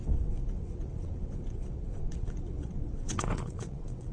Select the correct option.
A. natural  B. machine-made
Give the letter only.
B